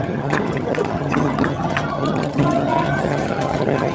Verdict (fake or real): fake